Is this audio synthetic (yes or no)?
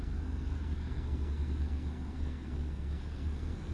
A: yes